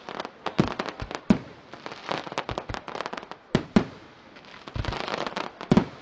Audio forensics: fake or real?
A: real